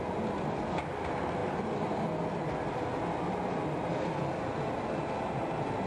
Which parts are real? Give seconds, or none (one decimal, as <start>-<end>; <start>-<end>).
0.0-5.9